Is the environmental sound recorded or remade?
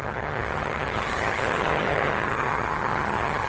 remade